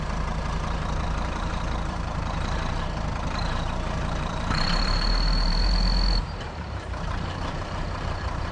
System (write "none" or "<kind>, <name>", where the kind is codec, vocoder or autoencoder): vocoder, BigVGAN v2